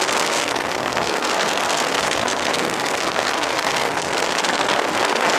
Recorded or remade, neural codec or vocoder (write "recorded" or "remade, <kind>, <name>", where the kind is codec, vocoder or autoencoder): remade, codec, SNAC